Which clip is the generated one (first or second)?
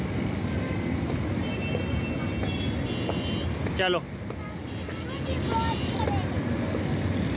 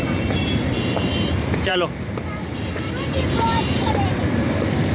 second